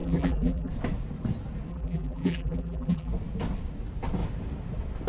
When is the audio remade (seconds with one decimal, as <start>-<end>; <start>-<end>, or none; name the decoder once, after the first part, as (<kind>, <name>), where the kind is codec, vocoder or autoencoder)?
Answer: 0.0-0.7 (vocoder, BigVGAN v2); 1.7-3.1